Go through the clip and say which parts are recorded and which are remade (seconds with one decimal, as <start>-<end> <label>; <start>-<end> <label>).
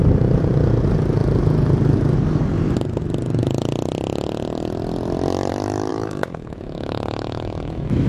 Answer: 0.0-5.9 recorded; 5.9-8.1 remade